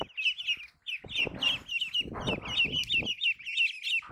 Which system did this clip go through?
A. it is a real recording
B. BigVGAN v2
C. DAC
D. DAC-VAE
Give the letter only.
A